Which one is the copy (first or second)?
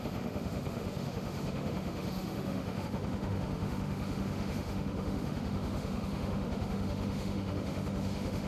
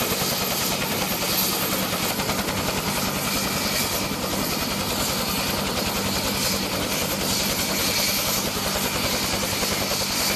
first